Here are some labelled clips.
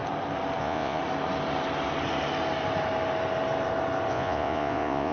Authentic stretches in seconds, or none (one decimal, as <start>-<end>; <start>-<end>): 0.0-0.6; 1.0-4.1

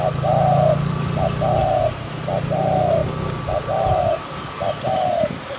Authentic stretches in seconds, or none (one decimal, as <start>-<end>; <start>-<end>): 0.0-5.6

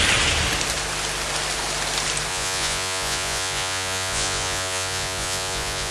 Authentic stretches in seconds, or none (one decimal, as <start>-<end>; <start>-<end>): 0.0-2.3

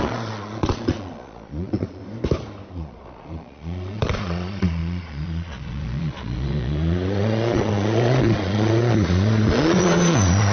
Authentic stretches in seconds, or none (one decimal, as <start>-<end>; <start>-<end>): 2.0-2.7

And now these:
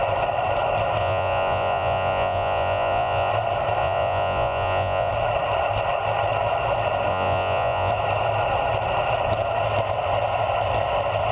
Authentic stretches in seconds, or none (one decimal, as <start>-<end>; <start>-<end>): 0.0-1.0; 3.3-3.8; 5.1-7.1; 7.9-11.3

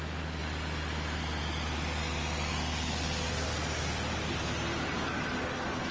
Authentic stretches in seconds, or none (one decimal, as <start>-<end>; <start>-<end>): 0.0-5.9

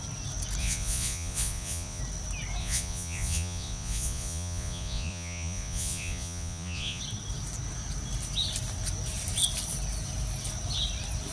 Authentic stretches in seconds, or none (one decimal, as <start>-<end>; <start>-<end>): 0.0-0.6; 2.0-2.6; 7.0-11.3

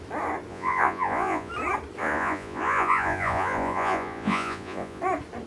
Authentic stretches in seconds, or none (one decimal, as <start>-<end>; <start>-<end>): 0.0-0.5; 1.5-2.0; 5.0-5.5